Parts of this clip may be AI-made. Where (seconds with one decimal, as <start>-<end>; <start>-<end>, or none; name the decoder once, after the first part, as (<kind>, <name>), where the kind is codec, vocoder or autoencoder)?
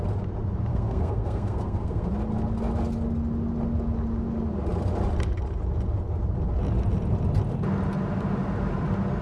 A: 0.7-2.1 (codec, SNAC)